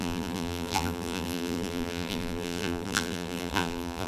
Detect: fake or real fake